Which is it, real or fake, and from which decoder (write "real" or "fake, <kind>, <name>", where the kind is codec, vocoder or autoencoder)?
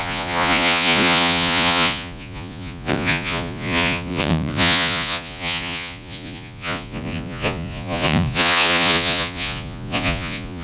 fake, vocoder, Vocos